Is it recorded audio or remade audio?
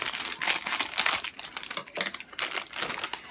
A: recorded